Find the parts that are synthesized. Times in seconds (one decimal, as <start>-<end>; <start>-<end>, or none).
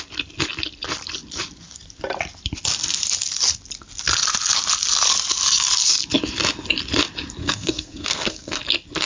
7.4-8.6